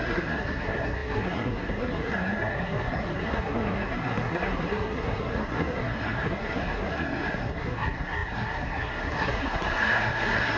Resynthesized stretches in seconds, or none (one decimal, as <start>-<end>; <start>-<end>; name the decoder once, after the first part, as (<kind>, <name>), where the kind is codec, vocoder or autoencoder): 0.0-10.6 (codec, SNAC)